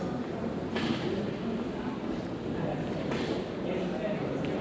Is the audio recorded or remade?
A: recorded